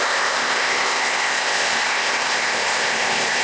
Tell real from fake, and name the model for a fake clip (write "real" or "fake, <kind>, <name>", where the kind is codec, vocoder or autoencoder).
fake, codec, ZipCodec